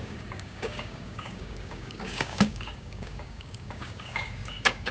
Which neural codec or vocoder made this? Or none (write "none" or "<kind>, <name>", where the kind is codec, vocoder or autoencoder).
codec, DAC